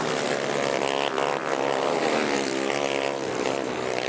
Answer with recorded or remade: recorded